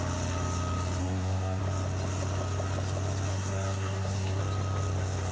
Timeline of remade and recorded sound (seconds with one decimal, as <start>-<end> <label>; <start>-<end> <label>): 0.0-1.0 recorded; 1.0-1.6 remade; 1.6-3.3 recorded; 3.3-4.4 remade; 4.4-5.3 recorded